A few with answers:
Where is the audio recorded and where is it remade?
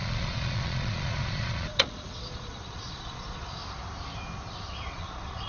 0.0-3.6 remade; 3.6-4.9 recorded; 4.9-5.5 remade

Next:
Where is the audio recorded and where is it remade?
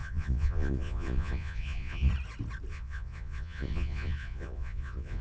0.0-2.1 remade; 2.1-2.7 recorded; 2.7-5.2 remade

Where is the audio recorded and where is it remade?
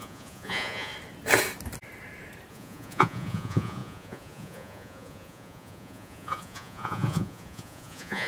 0.0-0.9 remade; 0.9-2.5 recorded; 2.5-8.3 remade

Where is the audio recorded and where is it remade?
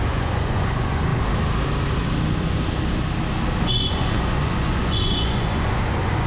0.0-1.1 remade; 1.1-3.6 recorded; 3.6-6.3 remade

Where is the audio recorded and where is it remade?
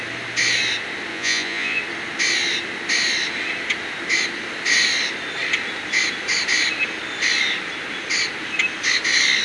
0.0-1.1 recorded; 1.1-1.8 remade; 1.8-9.4 recorded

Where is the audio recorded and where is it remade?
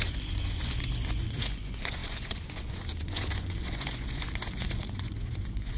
0.0-5.8 remade